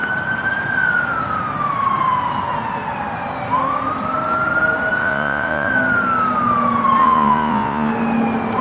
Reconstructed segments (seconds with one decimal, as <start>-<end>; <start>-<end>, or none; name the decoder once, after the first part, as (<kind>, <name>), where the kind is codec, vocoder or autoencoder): 5.0-5.7 (vocoder, Vocos); 7.0-7.9